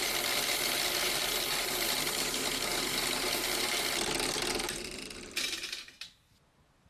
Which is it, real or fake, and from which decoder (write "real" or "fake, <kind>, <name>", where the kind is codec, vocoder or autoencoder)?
real